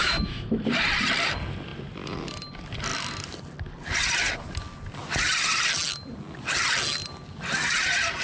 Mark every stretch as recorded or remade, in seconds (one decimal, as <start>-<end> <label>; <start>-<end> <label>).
0.0-0.6 remade; 0.6-8.2 recorded